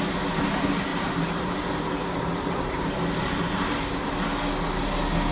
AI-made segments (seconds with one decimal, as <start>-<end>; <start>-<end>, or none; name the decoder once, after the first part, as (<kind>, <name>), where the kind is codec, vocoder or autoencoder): 0.9-4.1 (vocoder, BigVGAN v2)